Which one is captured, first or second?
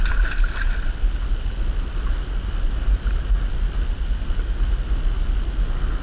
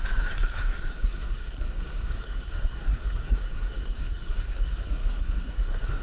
first